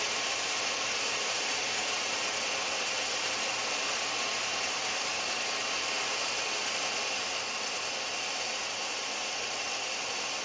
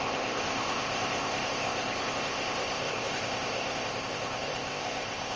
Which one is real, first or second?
first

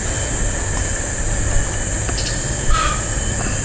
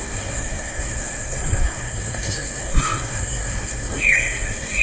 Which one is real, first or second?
first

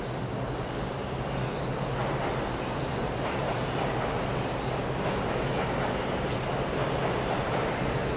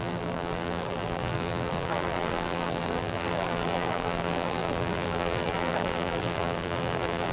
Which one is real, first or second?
first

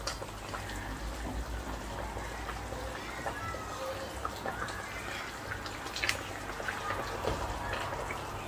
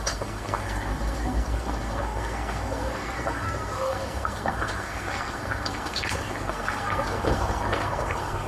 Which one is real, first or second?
first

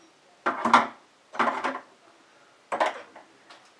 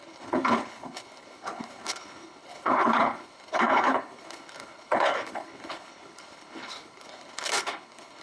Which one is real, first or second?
first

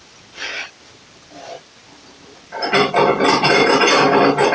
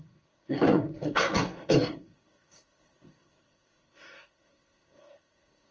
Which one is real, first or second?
first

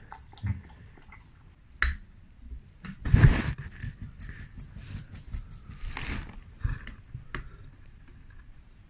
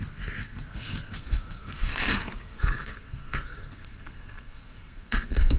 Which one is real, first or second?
first